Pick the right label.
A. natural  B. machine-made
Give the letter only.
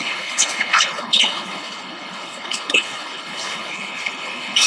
B